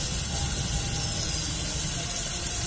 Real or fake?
real